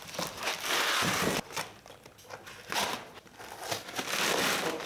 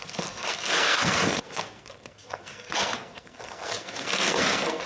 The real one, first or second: first